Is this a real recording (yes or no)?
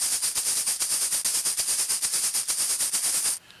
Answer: yes